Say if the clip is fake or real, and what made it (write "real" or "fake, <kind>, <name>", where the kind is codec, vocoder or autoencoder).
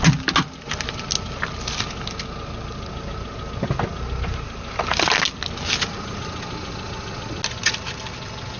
real